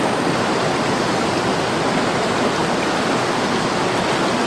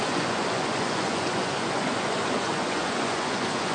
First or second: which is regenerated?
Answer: second